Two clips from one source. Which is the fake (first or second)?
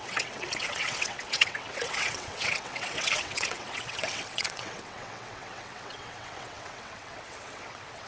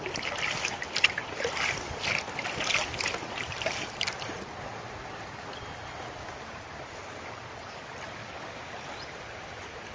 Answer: first